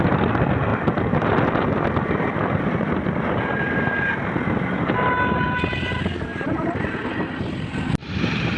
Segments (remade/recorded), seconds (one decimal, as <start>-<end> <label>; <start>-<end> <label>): 0.0-6.3 recorded; 6.3-7.0 remade; 7.0-8.6 recorded

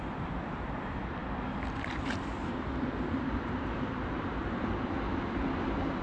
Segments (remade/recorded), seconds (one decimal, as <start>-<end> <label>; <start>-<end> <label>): 0.0-6.0 recorded

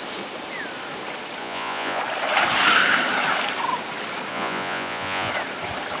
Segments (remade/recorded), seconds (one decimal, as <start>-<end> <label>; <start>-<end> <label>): 0.0-1.4 recorded; 1.4-2.0 remade; 2.0-4.3 recorded; 4.3-5.3 remade; 5.3-6.0 recorded

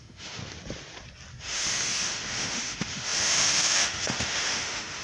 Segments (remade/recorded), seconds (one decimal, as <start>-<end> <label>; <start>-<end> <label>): 0.0-0.4 remade; 0.4-1.4 recorded; 1.4-5.0 remade

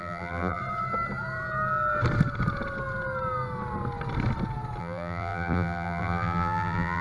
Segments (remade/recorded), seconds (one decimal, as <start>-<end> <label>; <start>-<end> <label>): 0.0-0.6 remade; 0.6-4.8 recorded; 4.8-7.0 remade

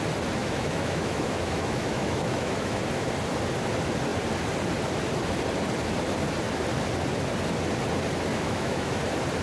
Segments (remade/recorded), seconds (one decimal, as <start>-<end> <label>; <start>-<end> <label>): 0.0-0.4 recorded; 0.4-2.8 remade; 2.8-8.3 recorded; 8.3-9.0 remade; 9.0-9.4 recorded